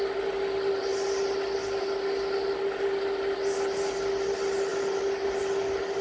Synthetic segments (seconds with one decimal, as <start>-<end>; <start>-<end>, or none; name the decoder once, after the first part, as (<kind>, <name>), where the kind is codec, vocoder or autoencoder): none